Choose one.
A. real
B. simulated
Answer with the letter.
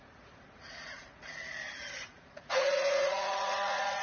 B